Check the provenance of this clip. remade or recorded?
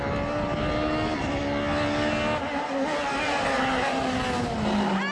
recorded